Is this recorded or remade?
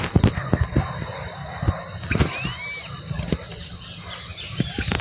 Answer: recorded